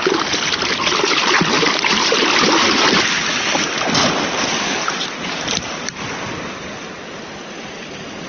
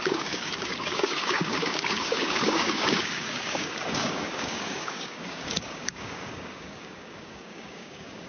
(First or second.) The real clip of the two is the first